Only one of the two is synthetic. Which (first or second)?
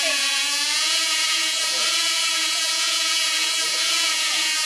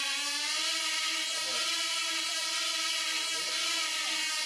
first